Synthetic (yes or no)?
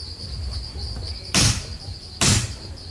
no